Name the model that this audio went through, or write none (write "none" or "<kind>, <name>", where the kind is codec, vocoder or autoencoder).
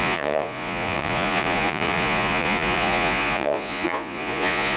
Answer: vocoder, Vocos